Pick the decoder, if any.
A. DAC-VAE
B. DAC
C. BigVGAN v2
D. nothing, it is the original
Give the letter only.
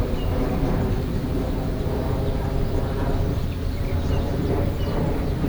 D